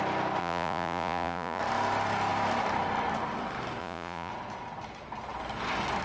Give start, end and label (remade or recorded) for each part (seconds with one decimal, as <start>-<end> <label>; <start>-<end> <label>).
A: 0.0-0.4 recorded; 0.4-1.6 remade; 1.6-3.8 recorded; 3.8-4.3 remade; 4.3-6.0 recorded